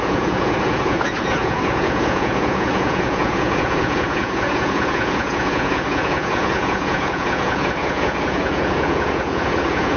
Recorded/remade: remade